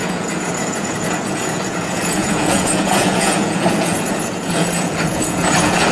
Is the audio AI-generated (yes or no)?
yes